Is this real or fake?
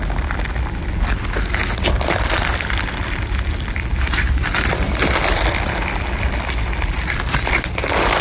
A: fake